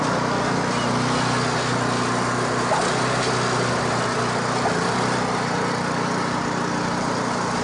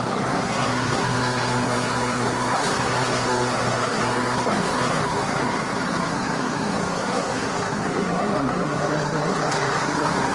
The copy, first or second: second